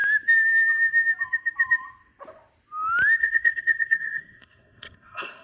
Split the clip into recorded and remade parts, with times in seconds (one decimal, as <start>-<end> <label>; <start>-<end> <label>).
0.0-3.2 recorded; 3.2-5.4 remade